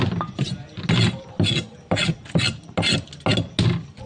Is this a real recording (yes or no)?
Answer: yes